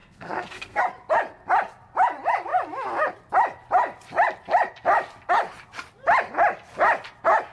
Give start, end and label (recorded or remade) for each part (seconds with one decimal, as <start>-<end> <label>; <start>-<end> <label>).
0.0-0.8 remade; 0.8-7.5 recorded